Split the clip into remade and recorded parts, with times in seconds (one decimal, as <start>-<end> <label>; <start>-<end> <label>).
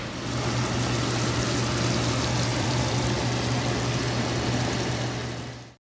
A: 0.0-2.5 recorded; 2.5-3.2 remade; 3.2-5.9 recorded